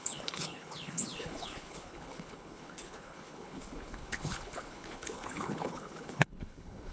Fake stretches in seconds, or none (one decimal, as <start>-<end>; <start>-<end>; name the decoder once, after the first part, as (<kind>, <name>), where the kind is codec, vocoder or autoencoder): 0.0-6.9 (codec, HILCodec)